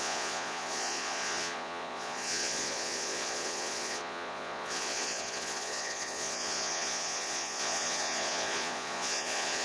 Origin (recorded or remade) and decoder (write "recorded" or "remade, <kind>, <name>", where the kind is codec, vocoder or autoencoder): remade, vocoder, Vocos